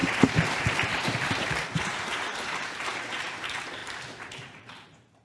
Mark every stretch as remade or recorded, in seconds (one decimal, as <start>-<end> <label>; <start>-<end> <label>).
0.0-5.2 remade